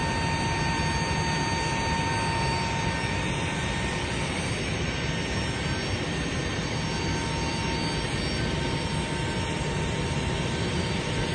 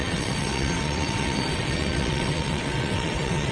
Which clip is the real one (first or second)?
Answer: first